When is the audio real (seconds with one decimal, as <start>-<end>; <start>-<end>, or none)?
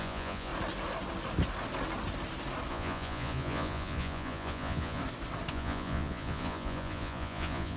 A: 0.5-2.7; 5.0-5.5